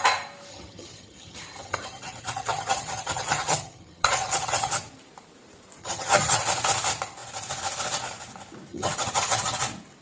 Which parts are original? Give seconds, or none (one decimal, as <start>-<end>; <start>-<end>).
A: 0.0-0.5; 4.8-5.8; 6.4-8.7; 9.6-10.0